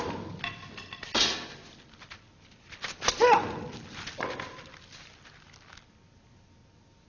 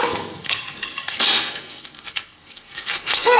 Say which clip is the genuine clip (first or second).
first